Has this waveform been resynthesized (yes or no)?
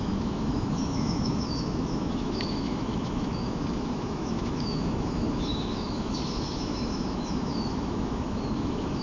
yes